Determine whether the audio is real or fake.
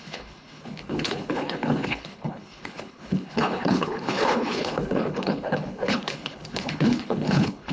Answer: fake